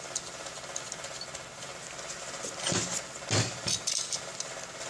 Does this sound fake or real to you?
real